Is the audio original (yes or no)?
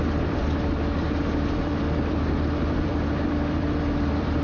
no